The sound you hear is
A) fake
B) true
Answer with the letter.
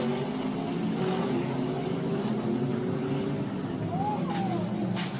B